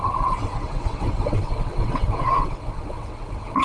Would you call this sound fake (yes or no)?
yes